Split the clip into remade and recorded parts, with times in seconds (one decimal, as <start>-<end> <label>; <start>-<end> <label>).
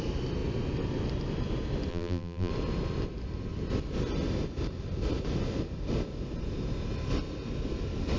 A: 0.0-1.9 recorded; 1.9-2.5 remade; 2.5-8.2 recorded